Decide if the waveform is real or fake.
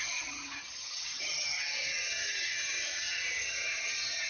fake